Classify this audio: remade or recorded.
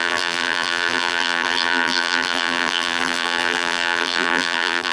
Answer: remade